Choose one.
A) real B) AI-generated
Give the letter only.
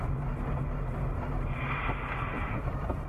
A